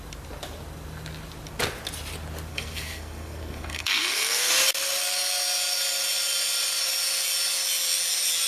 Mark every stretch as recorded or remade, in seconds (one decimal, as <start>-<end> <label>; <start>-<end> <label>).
0.0-2.5 recorded; 2.5-4.5 remade; 4.5-8.5 recorded